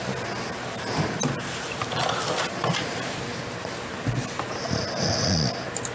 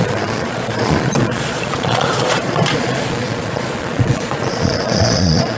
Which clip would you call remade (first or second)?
second